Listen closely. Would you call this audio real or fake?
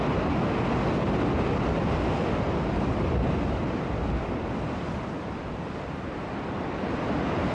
real